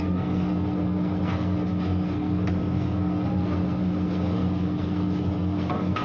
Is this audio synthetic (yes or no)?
yes